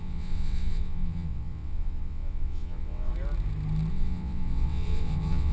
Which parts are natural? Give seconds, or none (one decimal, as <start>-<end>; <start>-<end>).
3.1-3.9